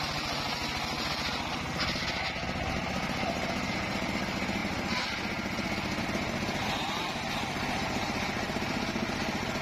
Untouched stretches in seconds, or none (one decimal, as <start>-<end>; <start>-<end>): 0.0-6.6; 8.8-9.6